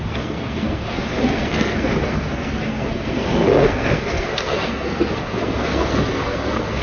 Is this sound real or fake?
fake